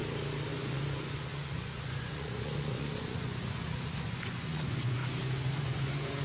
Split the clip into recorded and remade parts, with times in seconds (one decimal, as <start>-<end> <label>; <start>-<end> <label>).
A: 0.0-0.5 recorded; 0.5-5.0 remade; 5.0-5.6 recorded; 5.6-6.2 remade